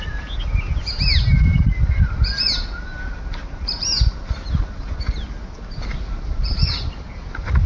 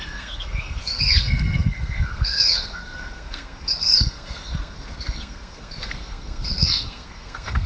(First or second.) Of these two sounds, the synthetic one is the second